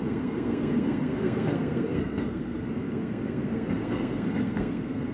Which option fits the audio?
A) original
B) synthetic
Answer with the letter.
B